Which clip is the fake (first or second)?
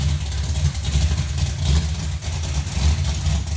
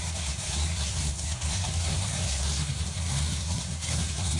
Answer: second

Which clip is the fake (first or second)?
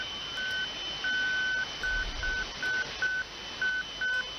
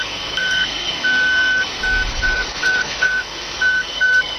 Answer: second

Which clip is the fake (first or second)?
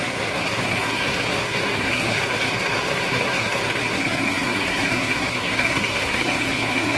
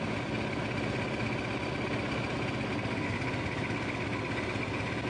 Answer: first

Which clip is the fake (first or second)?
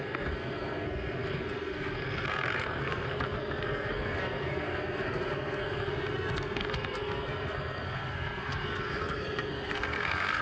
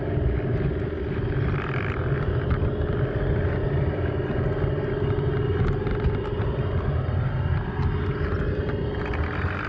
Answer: first